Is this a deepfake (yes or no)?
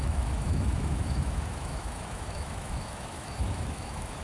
yes